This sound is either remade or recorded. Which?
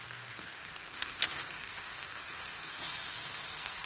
remade